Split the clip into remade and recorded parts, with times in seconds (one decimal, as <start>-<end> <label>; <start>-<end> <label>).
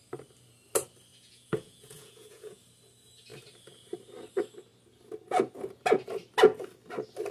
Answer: 0.0-1.1 recorded; 1.1-2.6 remade; 2.6-7.3 recorded